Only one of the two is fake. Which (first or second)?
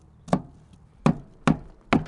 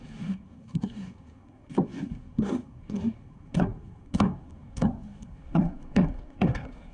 second